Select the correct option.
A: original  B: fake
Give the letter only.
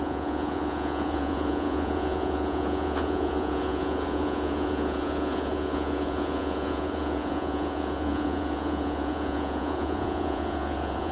B